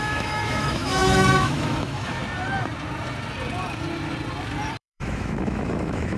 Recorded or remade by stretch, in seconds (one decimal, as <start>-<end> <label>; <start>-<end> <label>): 0.0-2.2 remade; 2.2-4.8 recorded; 4.8-6.2 remade